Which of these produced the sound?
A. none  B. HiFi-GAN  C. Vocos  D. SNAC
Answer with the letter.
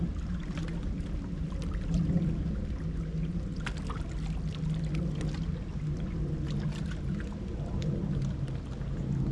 A